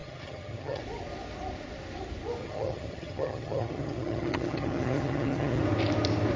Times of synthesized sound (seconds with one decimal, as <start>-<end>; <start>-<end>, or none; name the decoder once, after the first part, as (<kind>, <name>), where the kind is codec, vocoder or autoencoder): 0.0-0.8 (vocoder, HiFi-GAN); 2.4-5.6